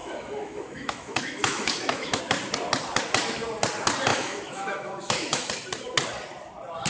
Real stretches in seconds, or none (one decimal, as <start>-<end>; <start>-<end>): 2.2-4.1; 5.5-6.9